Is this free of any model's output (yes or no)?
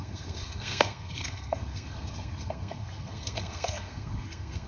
no